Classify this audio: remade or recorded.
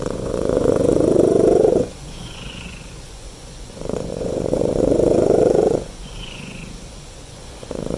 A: remade